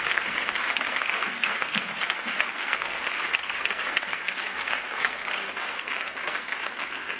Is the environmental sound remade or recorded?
remade